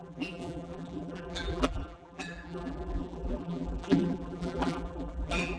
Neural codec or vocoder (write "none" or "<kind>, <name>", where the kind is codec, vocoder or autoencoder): vocoder, BigVGAN v2